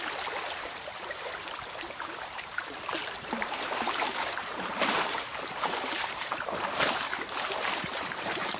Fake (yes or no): yes